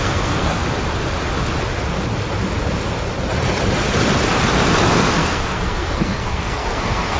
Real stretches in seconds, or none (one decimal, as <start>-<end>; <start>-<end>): 0.6-4.9